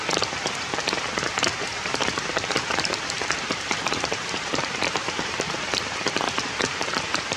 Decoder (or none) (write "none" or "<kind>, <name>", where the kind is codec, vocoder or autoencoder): vocoder, BigVGAN v2